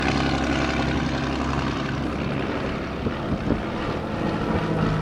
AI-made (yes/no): no